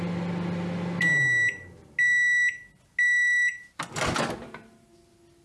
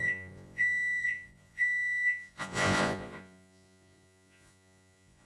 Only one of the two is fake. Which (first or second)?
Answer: second